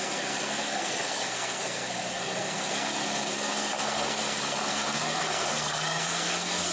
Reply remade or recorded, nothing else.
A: remade